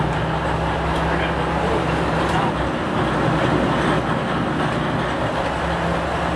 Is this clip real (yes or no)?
yes